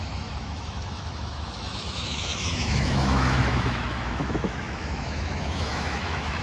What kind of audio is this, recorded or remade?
remade